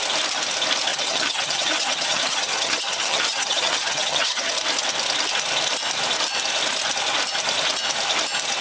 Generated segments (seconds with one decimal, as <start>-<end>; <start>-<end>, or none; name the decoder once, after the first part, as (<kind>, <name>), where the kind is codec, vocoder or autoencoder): 0.9-4.5 (vocoder, HiFi-GAN)